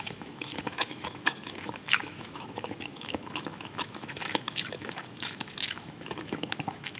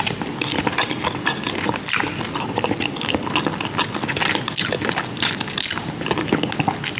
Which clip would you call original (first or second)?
second